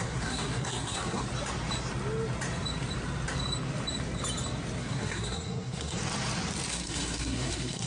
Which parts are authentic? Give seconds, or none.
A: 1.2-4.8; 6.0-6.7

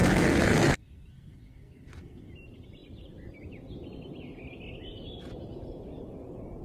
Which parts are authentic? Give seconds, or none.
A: 2.3-6.6

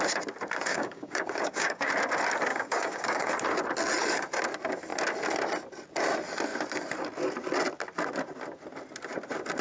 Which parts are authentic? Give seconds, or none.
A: 0.0-0.7; 1.9-2.5; 3.3-9.6

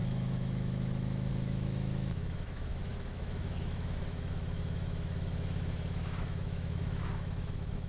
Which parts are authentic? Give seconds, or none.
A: none

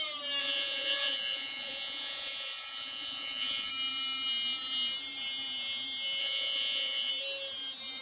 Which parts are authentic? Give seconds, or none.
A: 0.0-0.4; 3.7-6.2; 7.1-8.0

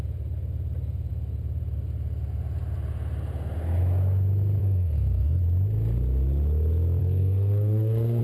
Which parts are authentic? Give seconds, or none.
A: 0.0-4.6; 5.4-7.0

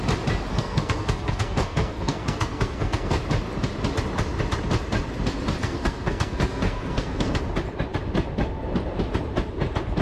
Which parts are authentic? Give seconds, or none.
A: 0.0-0.5; 3.2-5.6; 7.4-10.0